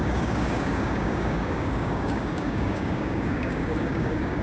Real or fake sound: fake